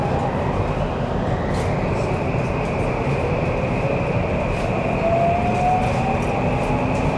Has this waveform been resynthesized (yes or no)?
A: no